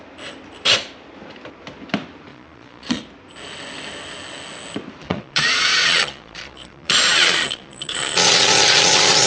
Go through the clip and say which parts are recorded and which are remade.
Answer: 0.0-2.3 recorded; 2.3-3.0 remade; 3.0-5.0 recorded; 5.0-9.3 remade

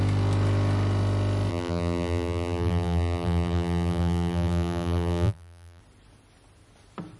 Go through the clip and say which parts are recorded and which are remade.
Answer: 0.0-1.5 recorded; 1.5-5.8 remade; 5.8-7.2 recorded

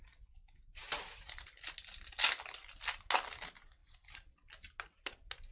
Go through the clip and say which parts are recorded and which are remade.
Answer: 0.0-5.5 recorded

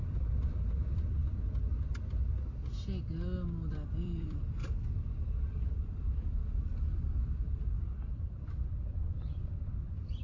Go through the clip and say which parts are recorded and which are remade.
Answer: 0.0-1.2 remade; 1.2-3.7 recorded; 3.7-4.6 remade; 4.6-5.3 recorded; 5.3-10.2 remade

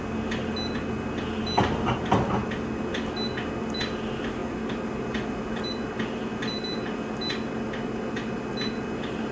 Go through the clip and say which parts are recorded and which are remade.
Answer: 0.0-9.3 recorded

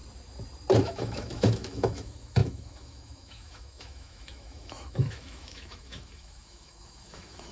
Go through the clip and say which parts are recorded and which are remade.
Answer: 0.0-0.8 recorded; 0.8-7.5 remade